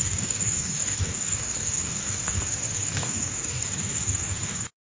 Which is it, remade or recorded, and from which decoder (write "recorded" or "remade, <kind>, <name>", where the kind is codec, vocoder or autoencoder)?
remade, codec, DAC